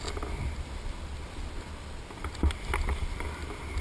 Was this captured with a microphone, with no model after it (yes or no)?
yes